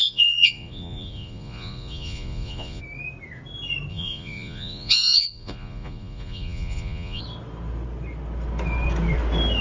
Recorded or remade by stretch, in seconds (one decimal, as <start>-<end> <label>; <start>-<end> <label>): 0.0-2.8 remade; 2.8-3.9 recorded; 3.9-7.2 remade; 7.2-9.6 recorded